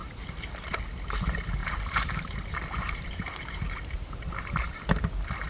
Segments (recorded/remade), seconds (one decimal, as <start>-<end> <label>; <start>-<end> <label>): 0.0-1.6 recorded; 1.6-4.9 remade; 4.9-5.5 recorded